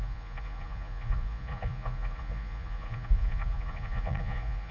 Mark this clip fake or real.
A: fake